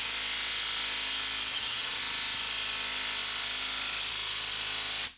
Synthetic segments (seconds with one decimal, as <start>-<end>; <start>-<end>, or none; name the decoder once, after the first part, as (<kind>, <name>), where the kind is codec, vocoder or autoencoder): 1.5-2.0 (vocoder, HiFi-GAN)